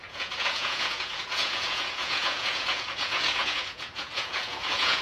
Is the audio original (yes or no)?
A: no